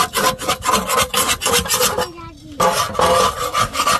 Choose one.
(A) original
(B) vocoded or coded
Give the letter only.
A